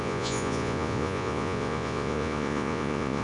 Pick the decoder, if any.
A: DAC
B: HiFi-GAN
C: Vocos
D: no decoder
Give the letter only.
C